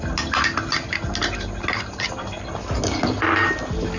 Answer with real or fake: real